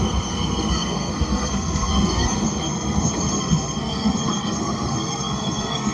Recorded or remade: remade